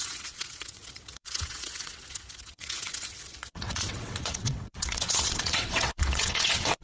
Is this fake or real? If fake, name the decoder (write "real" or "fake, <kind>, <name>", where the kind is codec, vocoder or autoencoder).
fake, vocoder, WaveNeXt